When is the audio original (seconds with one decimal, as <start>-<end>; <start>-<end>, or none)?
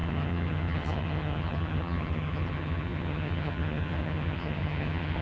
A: none